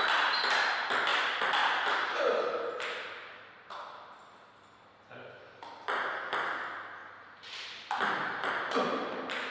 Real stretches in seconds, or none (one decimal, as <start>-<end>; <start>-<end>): 0.0-9.5